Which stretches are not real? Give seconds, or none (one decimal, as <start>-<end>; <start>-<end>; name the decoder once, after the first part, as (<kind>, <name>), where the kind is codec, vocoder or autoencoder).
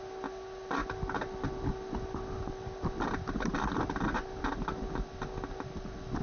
none